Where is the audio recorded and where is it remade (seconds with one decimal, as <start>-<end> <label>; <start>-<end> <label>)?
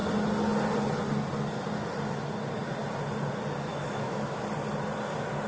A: 0.0-3.7 recorded; 3.7-4.4 remade; 4.4-5.5 recorded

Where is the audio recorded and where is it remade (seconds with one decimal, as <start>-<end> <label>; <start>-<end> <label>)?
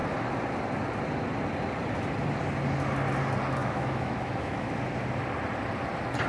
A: 0.0-3.6 recorded; 3.6-4.8 remade; 4.8-6.3 recorded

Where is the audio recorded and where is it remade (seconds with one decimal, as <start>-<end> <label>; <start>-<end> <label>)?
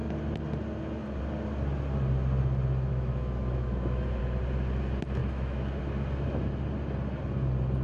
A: 0.0-2.9 recorded; 2.9-4.2 remade; 4.2-5.2 recorded; 5.2-5.8 remade; 5.8-7.8 recorded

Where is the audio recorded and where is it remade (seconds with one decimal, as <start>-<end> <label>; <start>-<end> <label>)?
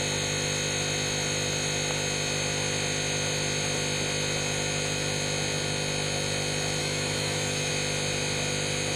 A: 0.0-6.8 recorded; 6.8-7.7 remade; 7.7-9.0 recorded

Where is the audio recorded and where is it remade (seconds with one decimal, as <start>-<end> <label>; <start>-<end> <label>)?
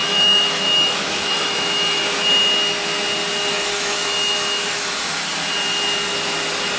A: 0.0-2.0 remade; 2.0-3.5 recorded; 3.5-5.2 remade; 5.2-6.8 recorded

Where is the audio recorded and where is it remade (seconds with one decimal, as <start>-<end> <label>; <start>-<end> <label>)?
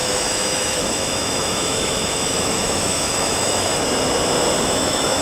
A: 0.0-3.7 remade; 3.7-4.6 recorded; 4.6-5.2 remade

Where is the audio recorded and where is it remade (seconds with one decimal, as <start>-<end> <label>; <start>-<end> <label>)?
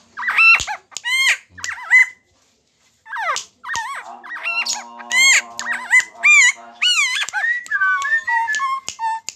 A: 0.0-6.3 recorded; 6.3-7.3 remade; 7.3-9.4 recorded